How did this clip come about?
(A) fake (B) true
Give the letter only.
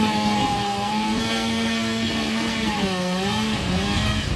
A